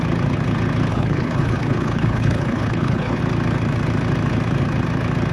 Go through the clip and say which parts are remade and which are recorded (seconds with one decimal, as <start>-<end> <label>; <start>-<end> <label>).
0.0-0.9 recorded; 0.9-3.2 remade; 3.2-5.3 recorded